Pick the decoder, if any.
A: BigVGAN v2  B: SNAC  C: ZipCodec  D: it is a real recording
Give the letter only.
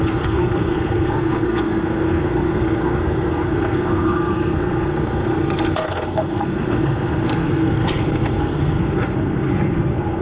B